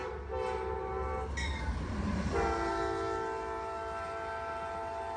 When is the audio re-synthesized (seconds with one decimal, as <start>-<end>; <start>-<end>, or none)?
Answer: none